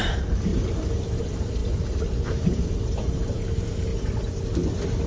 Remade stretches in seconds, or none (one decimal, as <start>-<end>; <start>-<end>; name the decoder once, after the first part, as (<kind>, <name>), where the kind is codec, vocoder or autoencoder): 0.0-0.5 (vocoder, BigVGAN v2); 1.2-3.9